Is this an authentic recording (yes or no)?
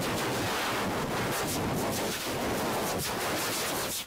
yes